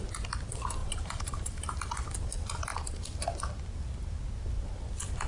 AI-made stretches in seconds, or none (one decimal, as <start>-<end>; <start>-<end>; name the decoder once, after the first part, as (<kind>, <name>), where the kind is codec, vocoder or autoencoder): 0.8-1.9 (vocoder, BigVGAN v2)